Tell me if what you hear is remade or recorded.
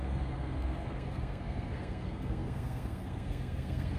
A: remade